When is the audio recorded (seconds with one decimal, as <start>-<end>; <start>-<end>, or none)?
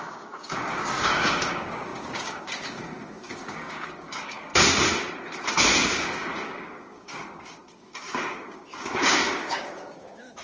4.5-5.9